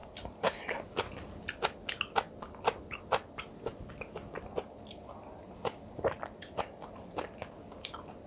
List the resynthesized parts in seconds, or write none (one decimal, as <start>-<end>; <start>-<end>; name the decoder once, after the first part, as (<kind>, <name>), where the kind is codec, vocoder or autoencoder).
none

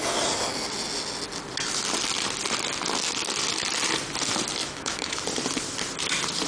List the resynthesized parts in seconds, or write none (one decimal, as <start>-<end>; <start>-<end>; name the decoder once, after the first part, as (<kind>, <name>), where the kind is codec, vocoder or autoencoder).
4.6-5.2 (autoencoder, DAC-VAE)

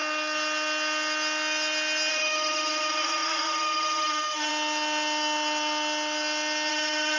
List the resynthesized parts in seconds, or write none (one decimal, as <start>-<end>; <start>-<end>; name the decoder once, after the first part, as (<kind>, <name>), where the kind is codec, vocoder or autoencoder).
2.1-4.5 (autoencoder, DAC-VAE); 6.7-7.2

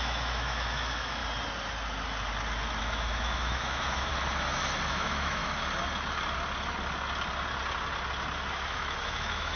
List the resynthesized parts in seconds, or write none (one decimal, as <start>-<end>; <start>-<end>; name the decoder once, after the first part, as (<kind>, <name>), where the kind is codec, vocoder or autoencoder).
0.0-1.2 (autoencoder, DAC-VAE); 2.8-4.1; 4.9-5.4; 8.5-9.6

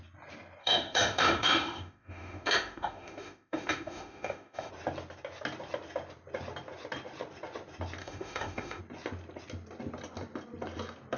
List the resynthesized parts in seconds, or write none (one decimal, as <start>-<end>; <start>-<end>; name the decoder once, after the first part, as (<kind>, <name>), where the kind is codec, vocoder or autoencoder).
0.6-4.7 (autoencoder, DAC-VAE); 8.0-8.8

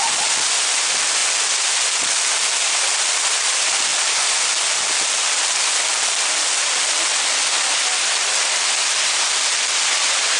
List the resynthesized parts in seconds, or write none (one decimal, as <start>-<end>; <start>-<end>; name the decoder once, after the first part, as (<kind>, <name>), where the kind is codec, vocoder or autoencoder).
none

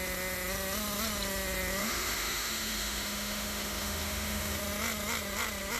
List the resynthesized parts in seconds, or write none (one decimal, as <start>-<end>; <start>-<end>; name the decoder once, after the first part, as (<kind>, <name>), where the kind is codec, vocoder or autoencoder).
1.8-4.6 (autoencoder, DAC-VAE)